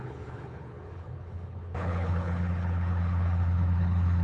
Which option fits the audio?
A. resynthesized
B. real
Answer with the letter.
A